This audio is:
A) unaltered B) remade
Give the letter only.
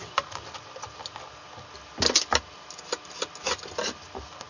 A